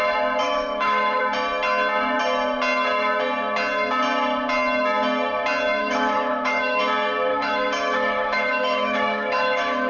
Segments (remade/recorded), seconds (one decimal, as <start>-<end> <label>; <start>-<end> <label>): 0.0-0.4 recorded; 0.4-1.2 remade; 1.2-5.8 recorded; 5.8-6.8 remade; 6.8-7.3 recorded; 7.3-9.9 remade